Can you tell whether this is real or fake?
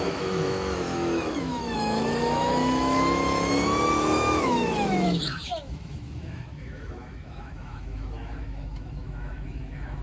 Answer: fake